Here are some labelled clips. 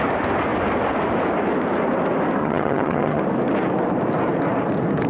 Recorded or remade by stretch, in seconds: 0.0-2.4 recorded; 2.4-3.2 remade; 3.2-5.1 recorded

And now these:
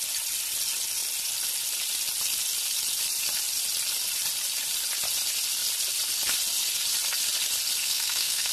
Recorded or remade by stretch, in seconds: 0.0-7.8 recorded; 7.8-8.5 remade

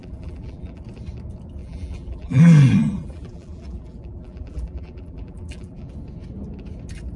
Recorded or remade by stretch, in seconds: 0.0-0.8 remade; 0.8-1.6 recorded; 1.6-5.9 remade; 5.9-7.2 recorded

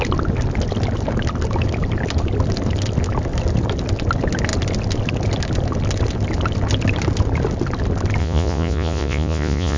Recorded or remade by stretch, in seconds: 0.0-8.2 recorded; 8.2-9.8 remade